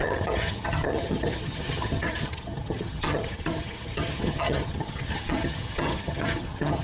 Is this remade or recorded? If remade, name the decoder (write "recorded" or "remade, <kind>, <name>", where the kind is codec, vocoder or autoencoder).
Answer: remade, vocoder, HiFi-GAN